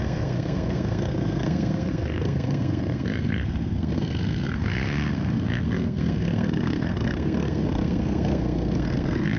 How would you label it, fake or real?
fake